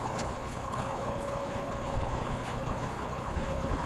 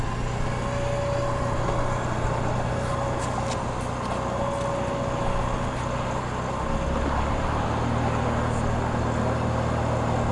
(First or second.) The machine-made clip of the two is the first